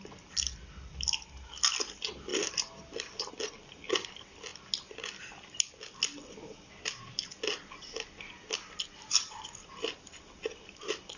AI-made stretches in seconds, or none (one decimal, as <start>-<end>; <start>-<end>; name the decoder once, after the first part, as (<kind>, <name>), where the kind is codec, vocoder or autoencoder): none